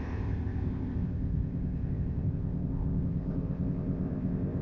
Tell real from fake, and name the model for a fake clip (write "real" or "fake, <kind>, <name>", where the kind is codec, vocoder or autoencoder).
fake, codec, ZipCodec